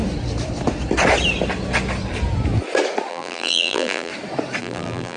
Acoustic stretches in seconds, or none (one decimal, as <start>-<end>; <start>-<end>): 0.0-3.1; 4.1-4.6

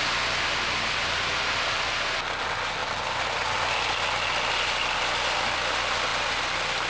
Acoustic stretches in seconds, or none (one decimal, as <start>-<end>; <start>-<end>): 0.0-6.9

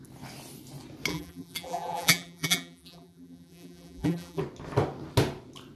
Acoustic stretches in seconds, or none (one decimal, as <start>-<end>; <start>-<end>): 0.0-1.1; 4.4-5.8

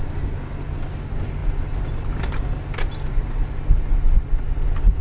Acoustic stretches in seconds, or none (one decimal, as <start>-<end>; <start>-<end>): 0.0-5.0